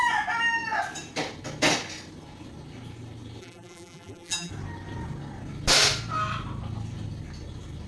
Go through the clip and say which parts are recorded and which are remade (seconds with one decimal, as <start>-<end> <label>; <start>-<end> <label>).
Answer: 0.0-3.4 recorded; 3.4-4.5 remade; 4.5-7.9 recorded